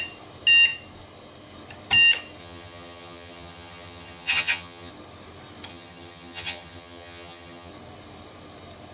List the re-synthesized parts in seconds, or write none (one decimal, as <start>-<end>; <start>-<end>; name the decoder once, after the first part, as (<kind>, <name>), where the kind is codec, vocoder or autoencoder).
2.4-4.9 (vocoder, HiFi-GAN); 5.7-7.7